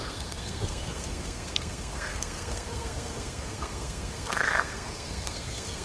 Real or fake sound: fake